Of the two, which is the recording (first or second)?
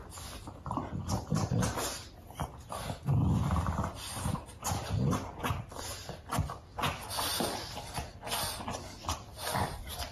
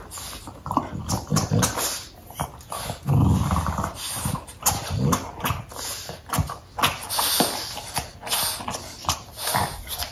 second